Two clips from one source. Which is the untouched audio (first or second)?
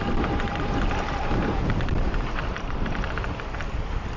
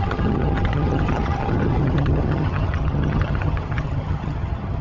first